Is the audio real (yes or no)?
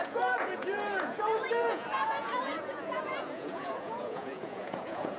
no